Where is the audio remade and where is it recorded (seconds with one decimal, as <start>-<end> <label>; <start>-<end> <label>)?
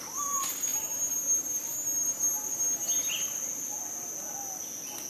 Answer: 0.0-5.1 recorded